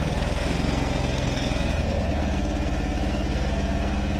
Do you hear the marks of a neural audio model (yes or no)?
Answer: yes